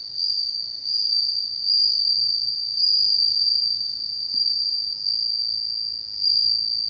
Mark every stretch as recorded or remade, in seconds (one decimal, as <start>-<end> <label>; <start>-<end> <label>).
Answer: 0.0-6.9 recorded

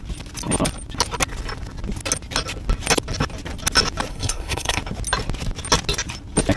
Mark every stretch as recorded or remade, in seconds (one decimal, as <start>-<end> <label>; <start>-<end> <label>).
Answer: 0.0-4.1 recorded; 4.1-4.8 remade; 4.8-6.6 recorded

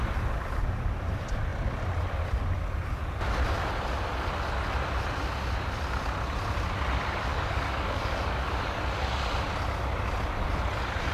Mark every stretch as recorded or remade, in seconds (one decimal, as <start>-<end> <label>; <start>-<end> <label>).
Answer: 0.0-7.3 recorded; 7.3-8.8 remade; 8.8-11.1 recorded

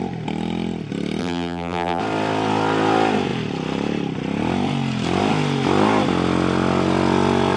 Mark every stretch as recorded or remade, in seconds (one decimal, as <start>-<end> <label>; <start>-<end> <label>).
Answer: 0.0-1.2 recorded; 1.2-2.0 remade; 2.0-7.6 recorded